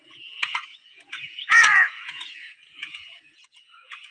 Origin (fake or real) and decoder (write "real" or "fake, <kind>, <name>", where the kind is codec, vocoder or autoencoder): fake, vocoder, Vocos